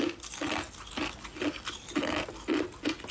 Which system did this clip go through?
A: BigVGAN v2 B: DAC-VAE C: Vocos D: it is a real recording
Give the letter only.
D